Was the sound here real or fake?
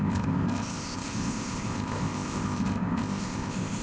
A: fake